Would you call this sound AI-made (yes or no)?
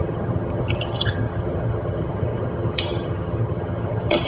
yes